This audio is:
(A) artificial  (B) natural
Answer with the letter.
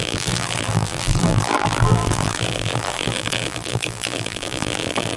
A